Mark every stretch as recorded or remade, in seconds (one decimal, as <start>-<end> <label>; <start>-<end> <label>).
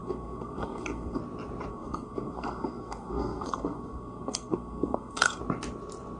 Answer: 0.0-1.2 remade; 1.2-1.7 recorded; 1.7-5.4 remade; 5.4-6.2 recorded